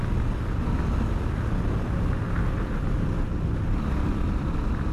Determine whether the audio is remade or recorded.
recorded